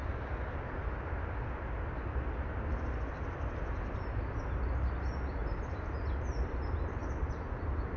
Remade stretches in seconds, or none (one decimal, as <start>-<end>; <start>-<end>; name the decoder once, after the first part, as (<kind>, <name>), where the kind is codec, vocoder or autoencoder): 5.4-6.3 (vocoder, BigVGAN v2); 7.0-8.0